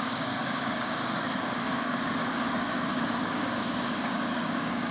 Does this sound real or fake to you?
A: fake